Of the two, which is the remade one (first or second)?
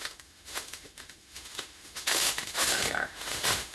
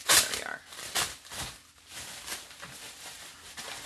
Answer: first